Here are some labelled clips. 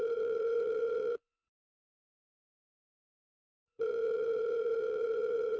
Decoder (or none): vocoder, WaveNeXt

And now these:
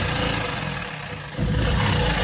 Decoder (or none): none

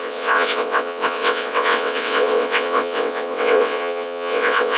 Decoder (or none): vocoder, WaveNeXt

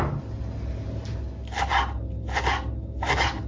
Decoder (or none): none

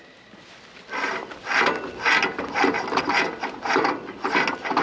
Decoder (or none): none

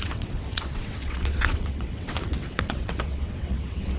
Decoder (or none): vocoder, WaveNeXt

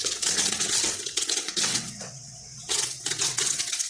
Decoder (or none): vocoder, WaveNeXt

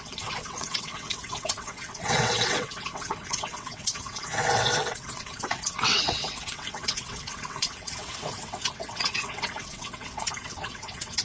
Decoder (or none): vocoder, WaveNeXt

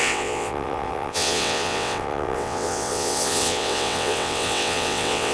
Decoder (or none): vocoder, WaveNeXt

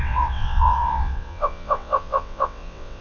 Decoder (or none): vocoder, WaveNeXt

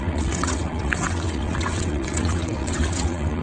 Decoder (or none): vocoder, WaveNeXt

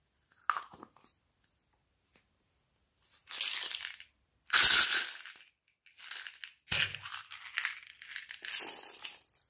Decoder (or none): none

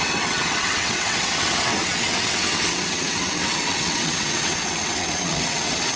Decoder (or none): vocoder, WaveNeXt